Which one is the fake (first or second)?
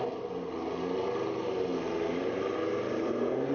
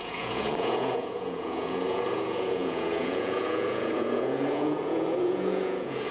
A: second